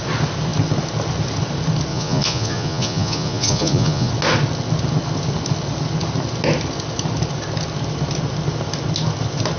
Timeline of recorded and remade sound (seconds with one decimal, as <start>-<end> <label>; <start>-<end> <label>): 0.0-1.9 recorded; 1.9-4.1 remade; 4.1-9.6 recorded